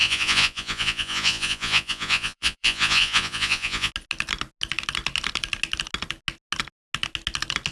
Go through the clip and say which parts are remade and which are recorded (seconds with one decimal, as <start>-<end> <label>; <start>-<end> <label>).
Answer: 0.0-3.9 remade; 3.9-7.7 recorded